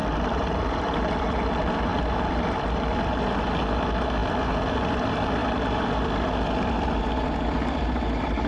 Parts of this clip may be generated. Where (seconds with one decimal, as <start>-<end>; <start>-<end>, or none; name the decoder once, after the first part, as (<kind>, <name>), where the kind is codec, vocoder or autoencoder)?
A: 0.0-1.5 (vocoder, BigVGAN v2); 1.9-2.9

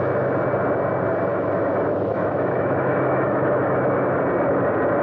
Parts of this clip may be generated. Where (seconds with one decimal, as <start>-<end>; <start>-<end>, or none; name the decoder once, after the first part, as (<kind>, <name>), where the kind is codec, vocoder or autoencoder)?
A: 1.3-4.2 (autoencoder, DAC-VAE)